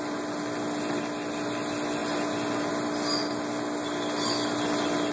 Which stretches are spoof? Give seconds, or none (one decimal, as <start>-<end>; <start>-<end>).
none